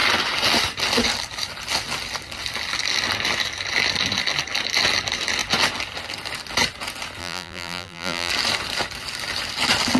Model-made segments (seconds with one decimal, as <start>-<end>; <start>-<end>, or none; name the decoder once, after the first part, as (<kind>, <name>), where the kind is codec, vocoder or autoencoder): 7.2-8.3 (vocoder, BigVGAN v2)